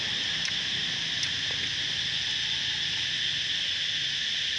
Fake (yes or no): no